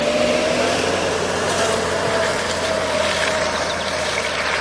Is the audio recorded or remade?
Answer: recorded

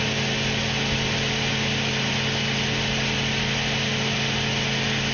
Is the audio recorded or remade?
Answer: recorded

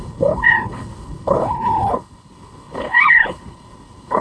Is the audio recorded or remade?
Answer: remade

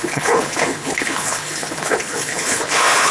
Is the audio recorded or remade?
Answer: remade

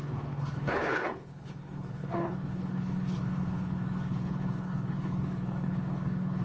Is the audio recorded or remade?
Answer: remade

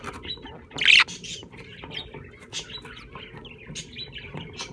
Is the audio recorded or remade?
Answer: recorded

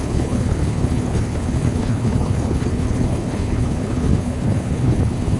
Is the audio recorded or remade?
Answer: remade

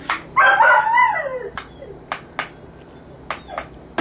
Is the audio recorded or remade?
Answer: recorded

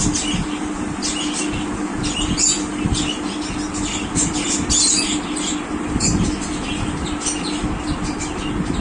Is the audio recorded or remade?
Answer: recorded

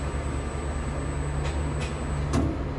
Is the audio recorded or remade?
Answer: recorded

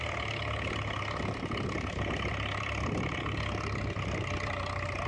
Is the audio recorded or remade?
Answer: recorded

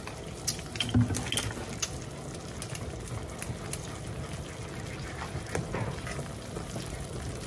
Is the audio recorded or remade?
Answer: recorded